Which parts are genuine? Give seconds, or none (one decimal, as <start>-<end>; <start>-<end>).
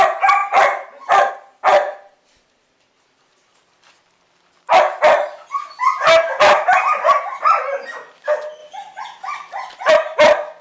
0.0-10.6